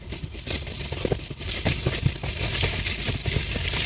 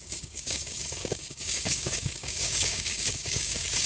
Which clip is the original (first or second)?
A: first